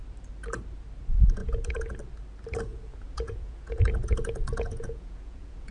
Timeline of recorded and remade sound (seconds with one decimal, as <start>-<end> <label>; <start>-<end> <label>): 0.0-1.4 recorded; 1.4-1.9 remade; 1.9-2.7 recorded; 2.7-5.7 remade